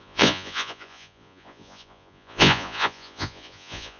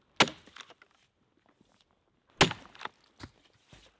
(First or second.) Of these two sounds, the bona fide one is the second